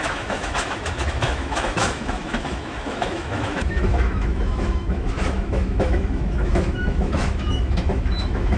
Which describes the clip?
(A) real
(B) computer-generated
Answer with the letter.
B